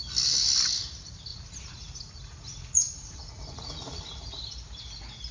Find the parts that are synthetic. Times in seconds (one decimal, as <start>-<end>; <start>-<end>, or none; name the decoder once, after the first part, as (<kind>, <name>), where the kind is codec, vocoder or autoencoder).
1.3-4.0 (vocoder, Vocos)